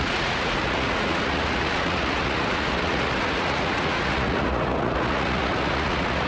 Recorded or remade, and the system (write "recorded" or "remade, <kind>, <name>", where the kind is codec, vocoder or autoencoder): remade, vocoder, Vocos